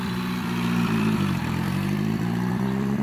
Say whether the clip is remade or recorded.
remade